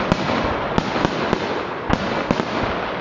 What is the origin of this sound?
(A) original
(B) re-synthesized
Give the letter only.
A